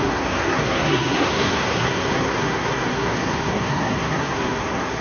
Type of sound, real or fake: fake